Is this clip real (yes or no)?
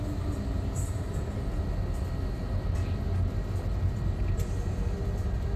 yes